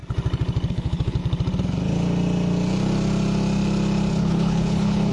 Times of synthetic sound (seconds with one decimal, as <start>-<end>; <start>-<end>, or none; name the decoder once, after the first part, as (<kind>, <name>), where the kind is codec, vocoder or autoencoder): 0.7-1.2 (codec, HILCodec); 4.1-5.1